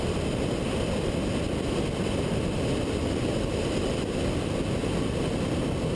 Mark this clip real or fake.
real